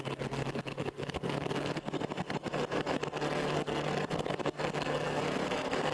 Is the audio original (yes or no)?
no